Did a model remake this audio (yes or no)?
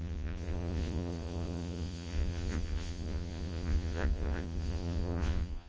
yes